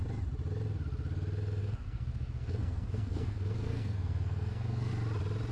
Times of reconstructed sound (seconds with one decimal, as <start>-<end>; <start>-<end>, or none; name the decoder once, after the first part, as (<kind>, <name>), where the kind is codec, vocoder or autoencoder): 1.6-4.9 (codec, SNAC)